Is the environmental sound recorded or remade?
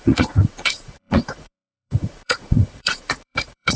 remade